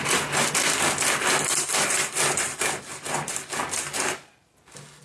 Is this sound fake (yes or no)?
no